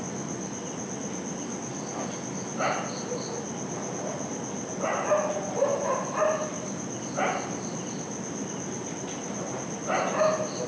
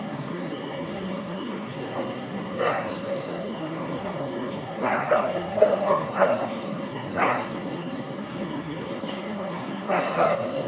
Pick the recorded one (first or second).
first